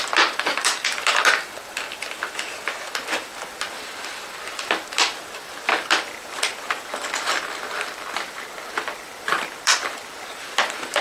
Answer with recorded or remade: remade